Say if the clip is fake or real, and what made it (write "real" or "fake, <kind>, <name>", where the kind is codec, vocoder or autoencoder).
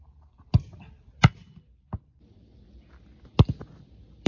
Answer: real